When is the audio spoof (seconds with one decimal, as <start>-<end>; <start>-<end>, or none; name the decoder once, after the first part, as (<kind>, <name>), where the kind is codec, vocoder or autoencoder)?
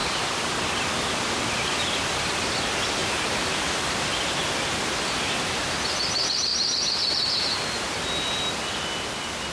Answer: 6.5-7.4 (vocoder, BigVGAN v2)